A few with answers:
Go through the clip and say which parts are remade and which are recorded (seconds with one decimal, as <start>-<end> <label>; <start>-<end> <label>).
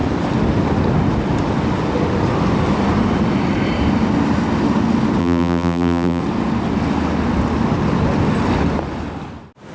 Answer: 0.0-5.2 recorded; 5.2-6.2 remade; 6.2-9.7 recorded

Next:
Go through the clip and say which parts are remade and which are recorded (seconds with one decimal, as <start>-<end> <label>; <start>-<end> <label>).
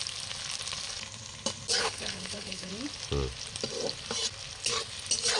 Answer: 0.0-1.8 recorded; 1.8-2.7 remade; 2.7-5.4 recorded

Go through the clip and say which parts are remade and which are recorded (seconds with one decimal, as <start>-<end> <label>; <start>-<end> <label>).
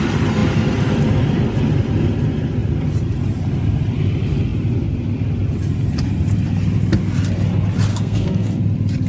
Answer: 0.0-7.9 recorded; 7.9-8.6 remade; 8.6-9.1 recorded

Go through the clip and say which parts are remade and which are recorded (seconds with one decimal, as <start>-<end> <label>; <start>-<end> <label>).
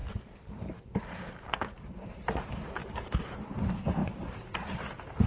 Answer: 0.0-2.3 remade; 2.3-2.8 recorded; 2.8-3.5 remade; 3.5-5.3 recorded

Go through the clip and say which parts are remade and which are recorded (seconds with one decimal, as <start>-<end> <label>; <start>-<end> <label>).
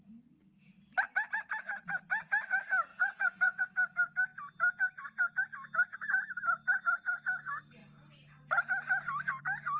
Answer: 0.0-2.9 recorded; 2.9-3.6 remade; 3.6-9.8 recorded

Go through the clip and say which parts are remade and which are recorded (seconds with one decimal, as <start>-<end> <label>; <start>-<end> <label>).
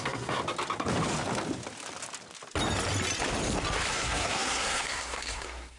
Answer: 0.0-0.4 remade; 0.4-3.9 recorded; 3.9-5.8 remade